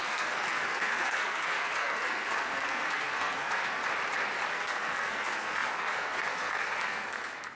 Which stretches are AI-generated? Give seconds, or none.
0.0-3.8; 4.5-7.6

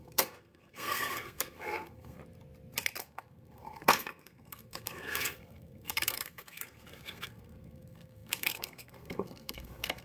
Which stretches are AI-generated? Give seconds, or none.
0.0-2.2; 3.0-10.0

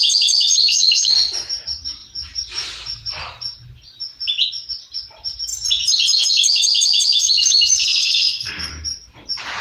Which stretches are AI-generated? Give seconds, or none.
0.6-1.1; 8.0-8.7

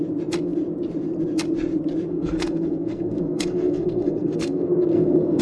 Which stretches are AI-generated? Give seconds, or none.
2.1-5.4